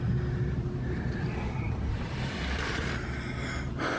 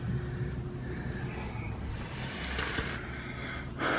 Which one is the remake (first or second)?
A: first